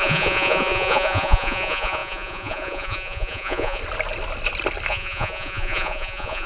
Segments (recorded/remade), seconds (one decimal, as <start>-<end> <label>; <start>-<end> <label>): 0.0-3.8 remade; 3.8-4.9 recorded; 4.9-6.5 remade